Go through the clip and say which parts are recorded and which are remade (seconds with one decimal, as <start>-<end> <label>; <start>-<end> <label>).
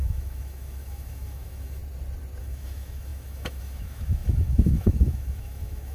0.0-1.8 remade; 1.8-2.4 recorded; 2.4-5.9 remade